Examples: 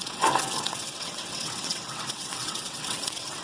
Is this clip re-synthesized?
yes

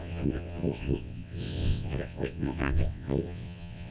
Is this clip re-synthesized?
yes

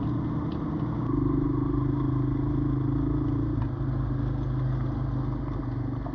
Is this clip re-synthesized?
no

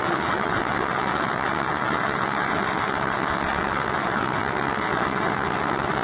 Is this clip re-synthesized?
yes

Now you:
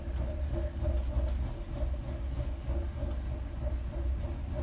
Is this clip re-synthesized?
no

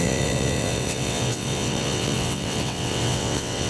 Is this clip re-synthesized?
yes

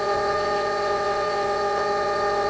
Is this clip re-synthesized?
yes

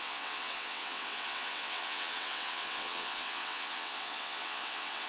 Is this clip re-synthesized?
yes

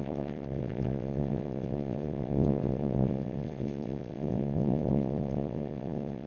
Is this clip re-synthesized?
yes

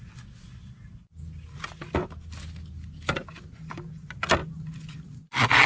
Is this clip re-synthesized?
no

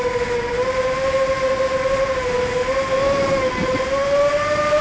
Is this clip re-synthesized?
no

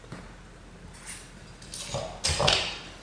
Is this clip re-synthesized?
no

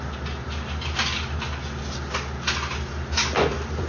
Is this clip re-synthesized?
no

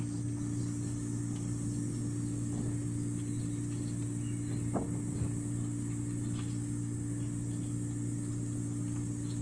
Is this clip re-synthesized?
no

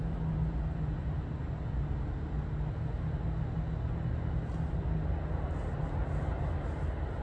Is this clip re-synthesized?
no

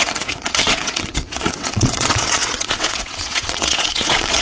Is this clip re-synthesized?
yes